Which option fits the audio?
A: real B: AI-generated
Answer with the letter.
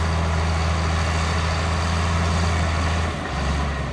A